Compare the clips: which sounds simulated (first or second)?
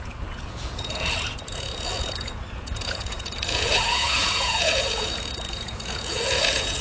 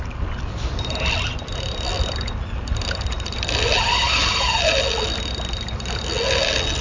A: first